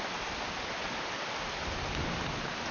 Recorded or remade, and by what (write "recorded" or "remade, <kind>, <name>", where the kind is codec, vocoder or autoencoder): recorded